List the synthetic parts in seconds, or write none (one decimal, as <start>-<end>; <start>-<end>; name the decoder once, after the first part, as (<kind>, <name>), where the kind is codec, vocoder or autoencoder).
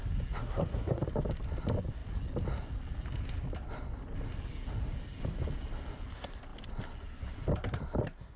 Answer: 0.4-1.0 (codec, SNAC)